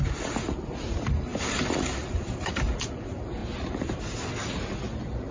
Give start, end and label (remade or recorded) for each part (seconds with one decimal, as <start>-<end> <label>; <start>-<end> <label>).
0.0-5.3 recorded